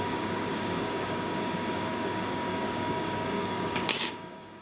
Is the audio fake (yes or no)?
yes